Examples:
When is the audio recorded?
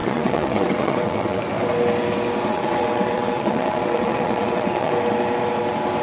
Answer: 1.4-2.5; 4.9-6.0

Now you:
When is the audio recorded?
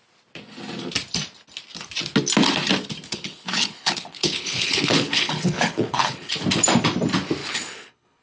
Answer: 0.0-3.1; 6.3-7.4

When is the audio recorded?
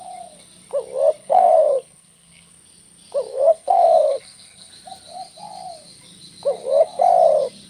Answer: 0.0-1.2; 2.5-3.3; 4.7-7.7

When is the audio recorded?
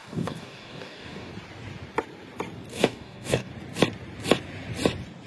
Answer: 1.3-2.7; 3.5-5.3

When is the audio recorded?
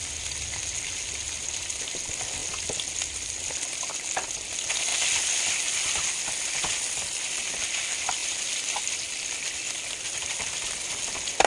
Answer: 0.0-11.5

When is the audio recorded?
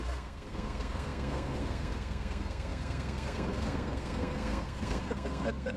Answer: none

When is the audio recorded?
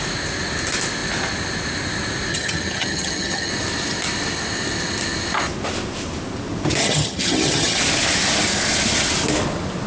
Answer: 0.0-2.3; 3.5-6.8; 7.8-9.9